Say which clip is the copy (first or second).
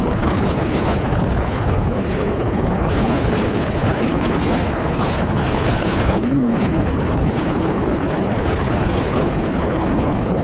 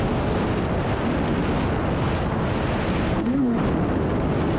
first